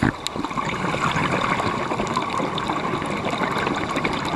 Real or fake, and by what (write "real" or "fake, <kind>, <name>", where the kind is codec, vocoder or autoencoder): real